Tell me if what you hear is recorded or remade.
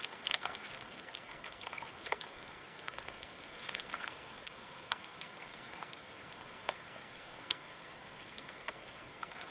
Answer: remade